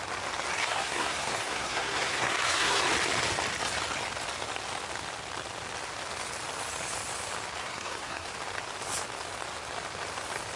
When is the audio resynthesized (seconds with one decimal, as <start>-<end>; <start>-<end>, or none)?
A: 0.6-2.8; 7.6-8.3